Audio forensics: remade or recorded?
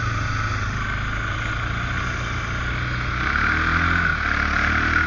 recorded